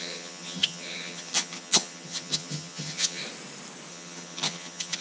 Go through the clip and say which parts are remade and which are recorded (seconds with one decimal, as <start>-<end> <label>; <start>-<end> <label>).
0.0-3.2 remade; 3.2-3.9 recorded; 3.9-5.0 remade